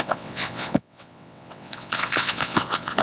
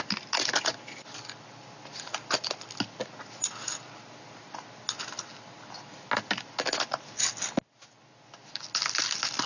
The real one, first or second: second